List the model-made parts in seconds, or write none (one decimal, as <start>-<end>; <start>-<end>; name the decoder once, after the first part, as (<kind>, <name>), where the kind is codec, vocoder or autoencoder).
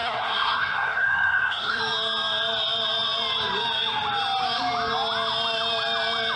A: 0.0-1.8 (codec, SNAC)